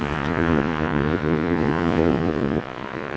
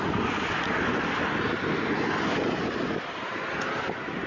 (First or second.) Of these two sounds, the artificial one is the first